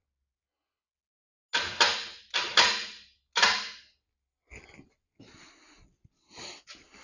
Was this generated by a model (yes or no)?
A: no